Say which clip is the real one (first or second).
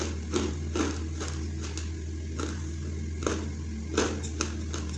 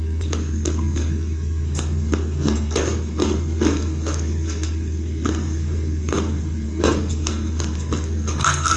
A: first